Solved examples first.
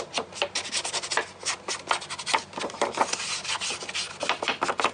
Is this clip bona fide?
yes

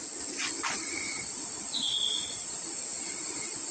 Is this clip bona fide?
no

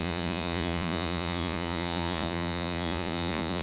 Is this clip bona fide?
no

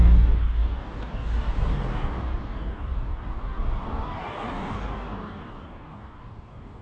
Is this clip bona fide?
no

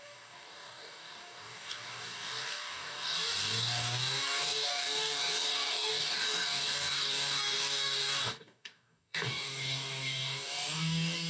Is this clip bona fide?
no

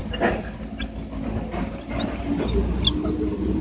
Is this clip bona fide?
yes